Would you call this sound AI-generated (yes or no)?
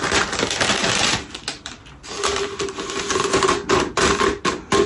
no